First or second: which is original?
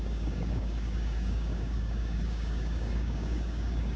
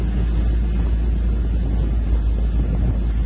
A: second